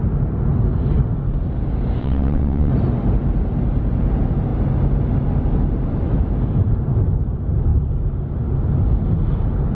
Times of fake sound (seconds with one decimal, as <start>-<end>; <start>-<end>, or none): 2.0-2.7